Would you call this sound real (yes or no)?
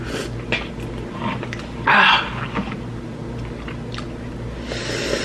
yes